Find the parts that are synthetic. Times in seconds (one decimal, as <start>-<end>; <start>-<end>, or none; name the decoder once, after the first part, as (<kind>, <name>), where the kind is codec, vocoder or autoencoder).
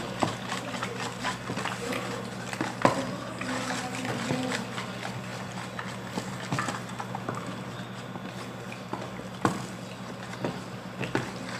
none